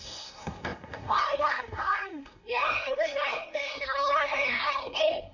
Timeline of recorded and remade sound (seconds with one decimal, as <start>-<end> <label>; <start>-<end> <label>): 0.0-5.3 remade